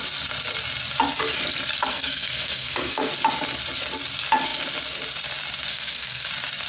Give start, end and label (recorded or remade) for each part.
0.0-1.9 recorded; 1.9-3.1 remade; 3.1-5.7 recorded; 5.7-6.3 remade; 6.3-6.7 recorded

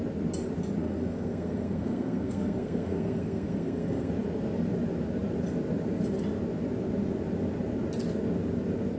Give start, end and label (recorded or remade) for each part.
0.0-0.8 recorded; 0.8-4.1 remade; 4.1-9.0 recorded

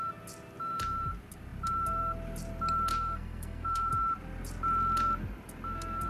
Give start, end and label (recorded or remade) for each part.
0.0-2.9 recorded; 2.9-3.9 remade; 3.9-6.1 recorded